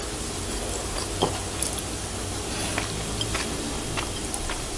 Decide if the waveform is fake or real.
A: real